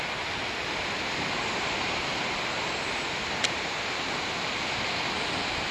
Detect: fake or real real